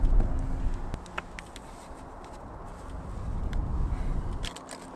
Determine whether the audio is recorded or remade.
recorded